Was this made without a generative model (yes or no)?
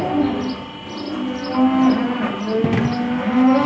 yes